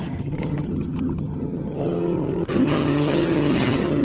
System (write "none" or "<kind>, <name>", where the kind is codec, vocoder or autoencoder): vocoder, HiFi-GAN